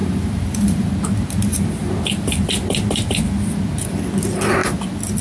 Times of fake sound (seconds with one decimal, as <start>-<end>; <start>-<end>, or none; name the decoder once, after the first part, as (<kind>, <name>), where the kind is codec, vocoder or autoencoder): 0.0-0.9 (vocoder, BigVGAN v2)